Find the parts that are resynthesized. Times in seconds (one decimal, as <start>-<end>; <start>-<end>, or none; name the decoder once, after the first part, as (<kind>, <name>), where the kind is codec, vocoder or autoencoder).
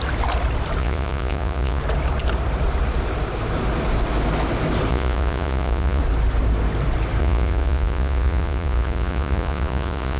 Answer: 0.8-1.8 (vocoder, Vocos); 4.9-6.0; 7.2-10.2